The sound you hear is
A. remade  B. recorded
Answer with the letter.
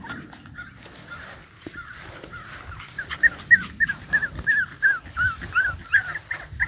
B